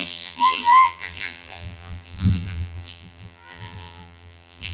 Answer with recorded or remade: remade